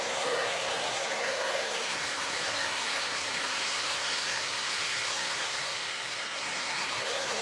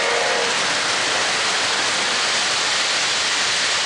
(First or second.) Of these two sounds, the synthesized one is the first